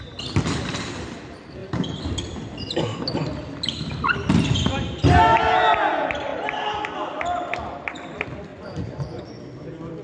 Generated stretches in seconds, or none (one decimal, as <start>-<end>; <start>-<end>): 8.5-9.2